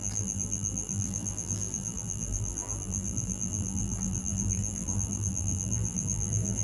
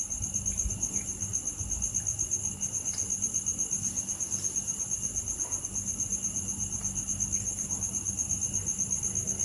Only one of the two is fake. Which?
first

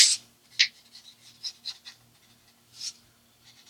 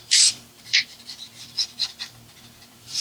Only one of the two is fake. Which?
second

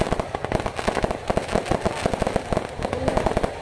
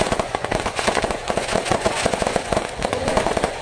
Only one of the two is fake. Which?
second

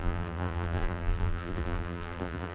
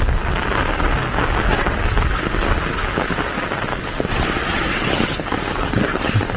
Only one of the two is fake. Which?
first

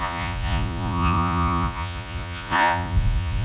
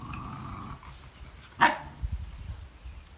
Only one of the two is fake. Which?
first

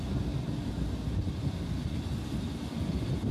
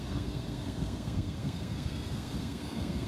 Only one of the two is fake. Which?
second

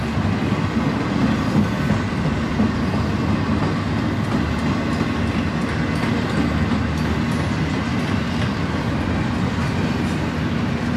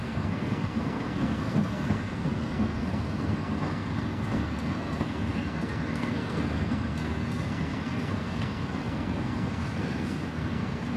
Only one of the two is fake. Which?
second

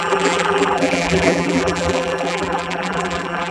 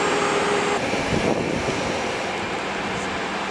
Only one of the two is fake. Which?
first